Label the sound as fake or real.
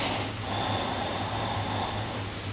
real